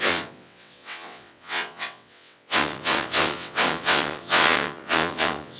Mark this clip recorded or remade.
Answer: remade